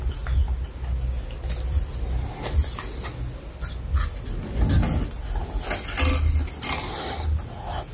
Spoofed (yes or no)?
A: no